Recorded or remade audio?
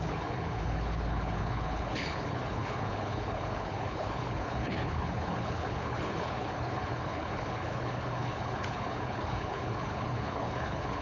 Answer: remade